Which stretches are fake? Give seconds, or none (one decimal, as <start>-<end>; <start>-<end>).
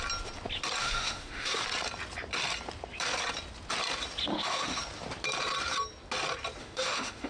0.8-1.6; 4.3-4.8; 6.6-7.3